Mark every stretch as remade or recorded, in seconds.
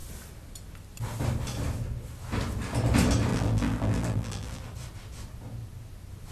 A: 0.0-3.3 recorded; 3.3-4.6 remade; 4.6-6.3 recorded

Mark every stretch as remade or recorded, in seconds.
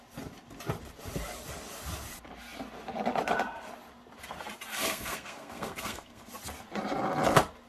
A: 0.0-4.7 recorded; 4.7-6.3 remade; 6.3-7.7 recorded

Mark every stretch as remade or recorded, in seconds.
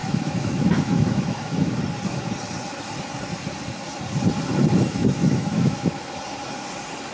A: 0.0-1.8 remade; 1.8-5.0 recorded; 5.0-6.0 remade; 6.0-7.1 recorded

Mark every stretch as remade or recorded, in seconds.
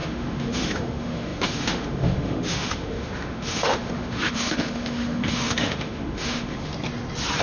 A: 0.0-6.7 remade; 6.7-7.4 recorded